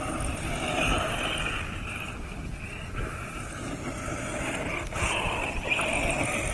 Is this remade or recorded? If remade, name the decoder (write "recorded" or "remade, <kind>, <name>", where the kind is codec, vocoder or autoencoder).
recorded